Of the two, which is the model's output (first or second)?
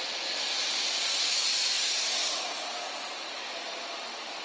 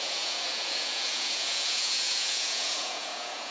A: second